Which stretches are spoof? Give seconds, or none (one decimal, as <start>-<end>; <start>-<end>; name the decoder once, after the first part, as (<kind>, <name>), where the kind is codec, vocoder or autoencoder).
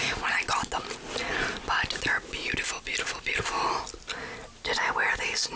none